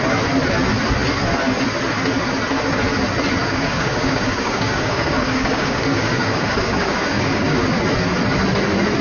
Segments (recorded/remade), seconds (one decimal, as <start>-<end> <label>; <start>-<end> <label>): 0.0-3.4 recorded; 3.4-7.7 remade; 7.7-9.0 recorded